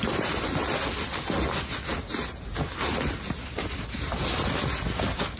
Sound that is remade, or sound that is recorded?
recorded